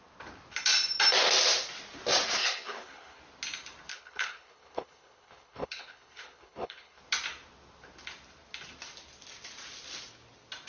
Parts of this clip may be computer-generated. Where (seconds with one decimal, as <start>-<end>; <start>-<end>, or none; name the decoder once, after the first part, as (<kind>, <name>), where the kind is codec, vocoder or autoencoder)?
2.4-3.2 (codec, HILCodec); 3.9-7.0